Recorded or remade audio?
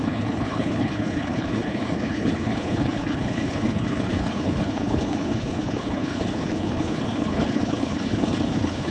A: remade